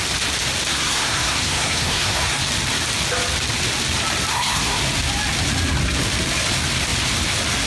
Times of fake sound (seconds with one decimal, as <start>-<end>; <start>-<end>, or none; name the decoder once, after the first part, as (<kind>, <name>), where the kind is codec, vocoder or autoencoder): 0.7-2.4 (codec, SNAC); 4.3-4.8